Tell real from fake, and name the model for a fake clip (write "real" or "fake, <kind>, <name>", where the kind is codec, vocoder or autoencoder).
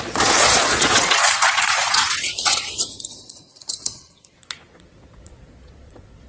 fake, vocoder, Vocos